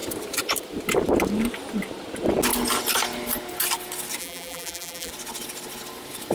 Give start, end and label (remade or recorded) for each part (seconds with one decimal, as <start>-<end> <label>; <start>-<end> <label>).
0.0-4.2 recorded; 4.2-5.1 remade; 5.1-6.3 recorded